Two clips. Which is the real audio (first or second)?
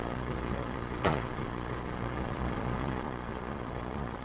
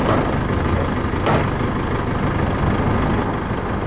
second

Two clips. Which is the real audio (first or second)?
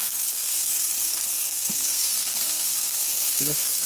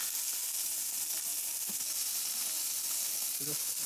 second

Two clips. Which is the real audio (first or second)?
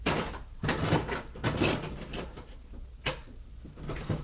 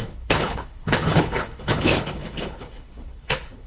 first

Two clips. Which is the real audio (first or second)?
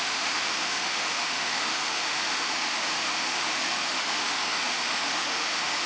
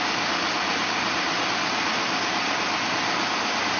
second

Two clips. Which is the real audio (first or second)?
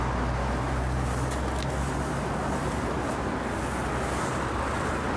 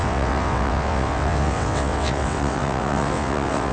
first